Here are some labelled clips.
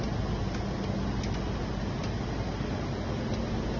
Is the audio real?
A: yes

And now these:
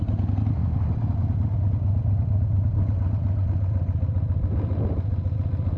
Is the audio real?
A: yes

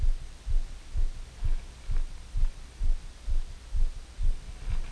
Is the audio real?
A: yes